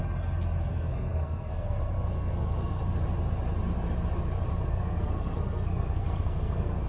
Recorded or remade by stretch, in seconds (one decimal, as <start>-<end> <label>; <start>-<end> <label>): 0.0-0.7 recorded; 0.7-2.8 remade; 2.8-4.7 recorded; 4.7-6.9 remade